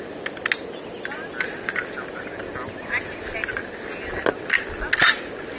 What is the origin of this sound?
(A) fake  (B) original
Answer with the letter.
B